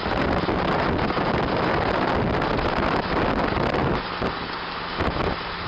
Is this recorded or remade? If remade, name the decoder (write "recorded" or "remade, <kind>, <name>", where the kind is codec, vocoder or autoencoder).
recorded